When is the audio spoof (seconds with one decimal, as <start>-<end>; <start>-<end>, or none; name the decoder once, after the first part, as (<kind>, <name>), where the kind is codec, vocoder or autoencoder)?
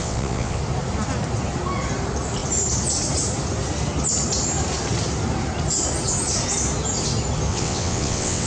0.0-0.6 (vocoder, WaveNeXt); 7.5-8.5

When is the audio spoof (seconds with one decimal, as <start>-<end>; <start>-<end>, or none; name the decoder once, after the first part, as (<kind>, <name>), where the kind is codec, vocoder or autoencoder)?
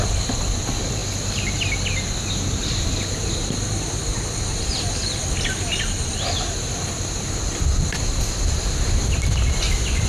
none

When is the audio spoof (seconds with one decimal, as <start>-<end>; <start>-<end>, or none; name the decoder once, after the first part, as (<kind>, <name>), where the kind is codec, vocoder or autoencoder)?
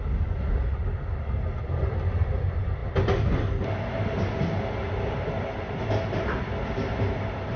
none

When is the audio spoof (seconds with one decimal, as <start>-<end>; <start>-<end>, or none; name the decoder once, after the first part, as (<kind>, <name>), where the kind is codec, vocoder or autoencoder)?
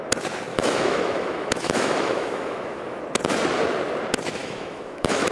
0.5-3.0 (autoencoder, DAC-VAE); 4.4-5.3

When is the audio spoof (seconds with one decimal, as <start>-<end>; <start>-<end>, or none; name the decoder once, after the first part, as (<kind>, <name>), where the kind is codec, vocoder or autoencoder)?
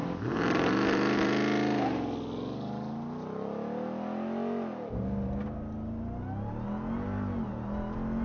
none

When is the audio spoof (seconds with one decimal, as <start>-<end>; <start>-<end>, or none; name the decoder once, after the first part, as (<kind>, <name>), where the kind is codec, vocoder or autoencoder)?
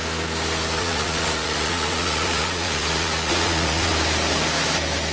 0.8-3.9 (vocoder, Vocos)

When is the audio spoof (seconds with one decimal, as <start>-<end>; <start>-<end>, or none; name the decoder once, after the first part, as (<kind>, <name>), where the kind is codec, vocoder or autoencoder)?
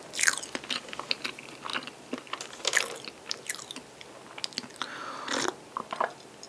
none